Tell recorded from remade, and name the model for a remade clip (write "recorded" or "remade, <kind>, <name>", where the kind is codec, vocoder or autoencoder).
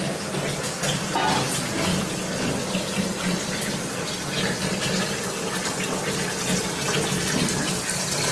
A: recorded